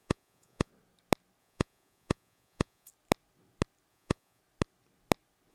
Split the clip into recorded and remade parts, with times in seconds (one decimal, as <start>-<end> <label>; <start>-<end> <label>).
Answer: 0.0-0.7 remade; 0.7-1.4 recorded; 1.4-2.9 remade; 2.9-3.9 recorded; 3.9-4.4 remade; 4.4-5.5 recorded